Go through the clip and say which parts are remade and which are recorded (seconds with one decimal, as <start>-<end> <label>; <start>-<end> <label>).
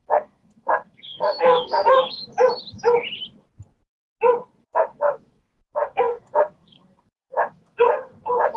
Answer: 0.0-2.2 remade; 2.2-4.6 recorded; 4.6-8.6 remade